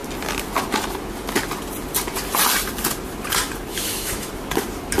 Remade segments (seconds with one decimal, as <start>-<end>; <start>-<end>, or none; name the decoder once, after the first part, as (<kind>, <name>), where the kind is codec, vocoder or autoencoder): 3.7-4.3 (autoencoder, DAC-VAE)